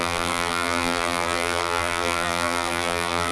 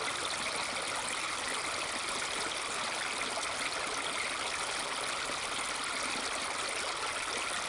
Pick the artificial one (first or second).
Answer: first